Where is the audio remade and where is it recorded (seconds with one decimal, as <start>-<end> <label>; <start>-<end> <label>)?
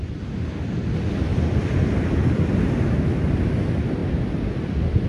0.0-1.3 recorded; 1.3-2.5 remade; 2.5-5.1 recorded